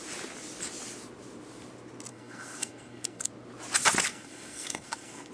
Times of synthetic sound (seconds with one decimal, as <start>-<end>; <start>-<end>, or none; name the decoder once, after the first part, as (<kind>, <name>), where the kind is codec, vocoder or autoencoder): 2.1-3.3 (codec, SNAC); 4.1-5.3